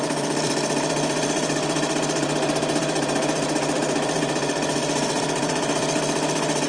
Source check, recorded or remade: remade